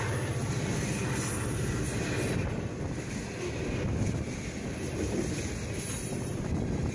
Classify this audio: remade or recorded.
recorded